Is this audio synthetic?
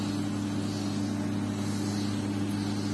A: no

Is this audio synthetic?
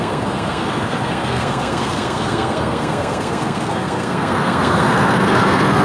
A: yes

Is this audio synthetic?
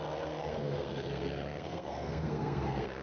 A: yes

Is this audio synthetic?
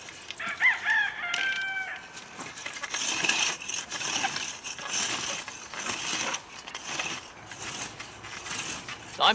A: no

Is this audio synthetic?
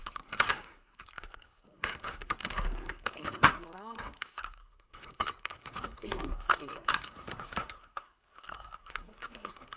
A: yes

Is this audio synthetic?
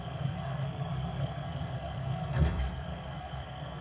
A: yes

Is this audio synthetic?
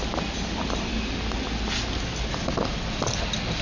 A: no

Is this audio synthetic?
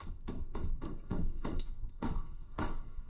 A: yes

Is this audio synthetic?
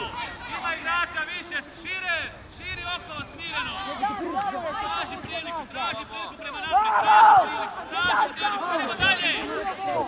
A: no